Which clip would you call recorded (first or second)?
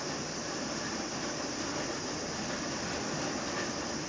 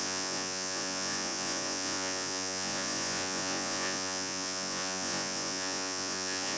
first